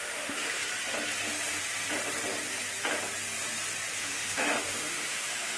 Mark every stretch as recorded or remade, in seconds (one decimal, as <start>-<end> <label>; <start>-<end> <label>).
0.0-0.6 remade; 0.6-4.0 recorded; 4.0-5.6 remade